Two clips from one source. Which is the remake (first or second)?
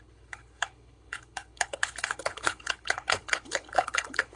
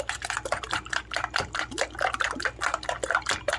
first